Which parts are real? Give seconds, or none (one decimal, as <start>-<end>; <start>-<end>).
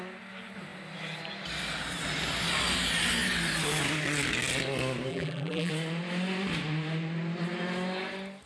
0.0-5.1; 5.7-8.5